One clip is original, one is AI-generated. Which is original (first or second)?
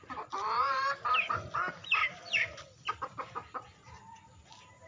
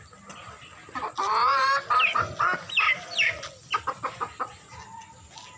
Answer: second